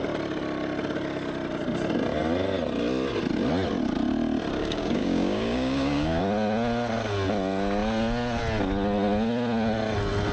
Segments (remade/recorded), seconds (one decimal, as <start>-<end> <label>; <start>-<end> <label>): 0.0-4.6 recorded; 4.6-6.2 remade; 6.2-10.3 recorded